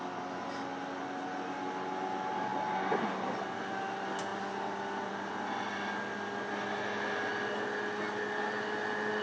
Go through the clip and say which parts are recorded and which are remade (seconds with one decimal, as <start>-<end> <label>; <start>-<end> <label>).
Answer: 0.0-9.2 recorded